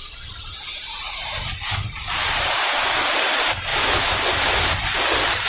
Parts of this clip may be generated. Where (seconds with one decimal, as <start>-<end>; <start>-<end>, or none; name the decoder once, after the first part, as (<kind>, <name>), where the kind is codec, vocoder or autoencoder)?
0.0-3.1 (vocoder, BigVGAN v2); 3.7-5.5